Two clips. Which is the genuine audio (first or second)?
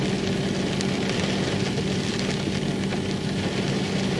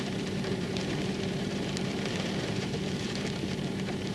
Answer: first